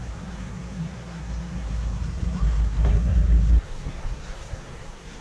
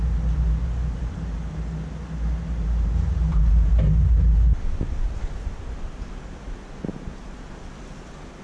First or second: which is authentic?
second